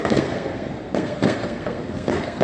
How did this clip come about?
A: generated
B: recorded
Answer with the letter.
A